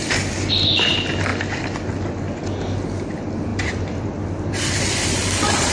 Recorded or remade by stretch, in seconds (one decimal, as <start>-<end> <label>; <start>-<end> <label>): 0.0-3.5 recorded; 3.5-5.7 remade